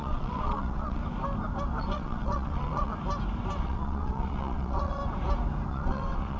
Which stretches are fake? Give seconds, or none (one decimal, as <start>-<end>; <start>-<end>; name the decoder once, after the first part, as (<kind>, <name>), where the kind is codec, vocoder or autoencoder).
0.0-1.0 (vocoder, WaveNeXt); 1.8-2.9; 3.6-5.0; 5.7-6.4